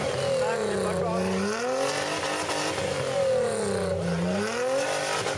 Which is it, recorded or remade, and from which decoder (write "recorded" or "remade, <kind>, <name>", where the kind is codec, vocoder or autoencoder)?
recorded